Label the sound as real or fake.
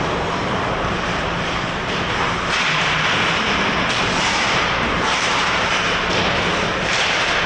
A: fake